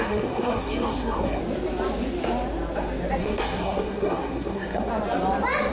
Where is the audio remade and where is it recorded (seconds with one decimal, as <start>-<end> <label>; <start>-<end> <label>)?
0.0-1.4 remade; 1.4-3.2 recorded; 3.2-4.9 remade; 4.9-5.7 recorded

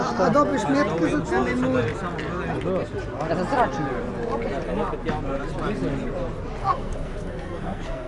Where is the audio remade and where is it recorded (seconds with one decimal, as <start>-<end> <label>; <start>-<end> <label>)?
0.0-6.6 recorded; 6.6-8.1 remade

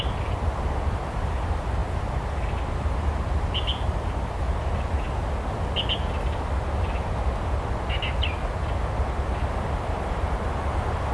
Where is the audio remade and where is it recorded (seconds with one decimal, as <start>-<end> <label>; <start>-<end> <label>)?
0.0-11.1 recorded